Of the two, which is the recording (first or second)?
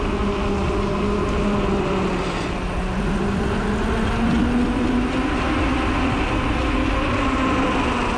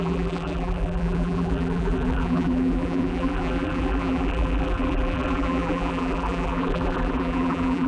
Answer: first